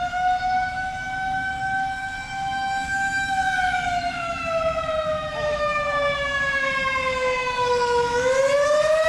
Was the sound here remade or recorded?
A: remade